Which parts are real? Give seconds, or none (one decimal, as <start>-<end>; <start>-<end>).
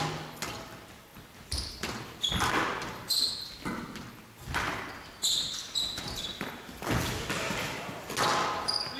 0.0-1.1; 2.3-2.7; 3.3-5.2; 6.7-9.0